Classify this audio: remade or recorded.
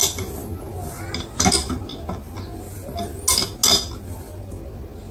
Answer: recorded